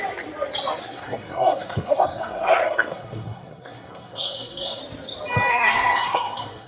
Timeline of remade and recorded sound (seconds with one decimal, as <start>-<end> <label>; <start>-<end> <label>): 0.0-0.8 recorded; 0.8-4.8 remade; 4.8-5.5 recorded; 5.5-6.7 remade